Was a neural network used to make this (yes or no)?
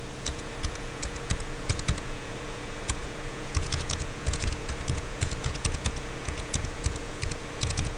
yes